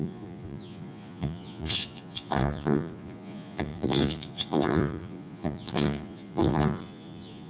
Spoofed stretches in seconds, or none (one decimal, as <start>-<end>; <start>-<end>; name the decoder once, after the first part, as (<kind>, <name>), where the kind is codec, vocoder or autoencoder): 0.0-7.5 (vocoder, Vocos)